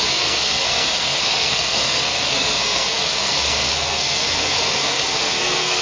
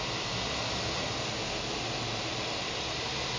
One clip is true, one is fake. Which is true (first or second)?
second